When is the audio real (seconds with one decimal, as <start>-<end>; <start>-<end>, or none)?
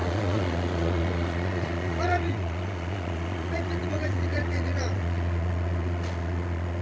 none